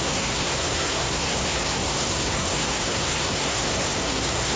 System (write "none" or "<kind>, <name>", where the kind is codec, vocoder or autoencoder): codec, SNAC